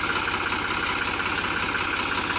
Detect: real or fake real